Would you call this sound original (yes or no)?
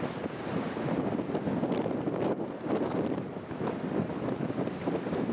yes